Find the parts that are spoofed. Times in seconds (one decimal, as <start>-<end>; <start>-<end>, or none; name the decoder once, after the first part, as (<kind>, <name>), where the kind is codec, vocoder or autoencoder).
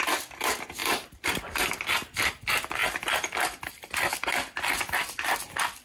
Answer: none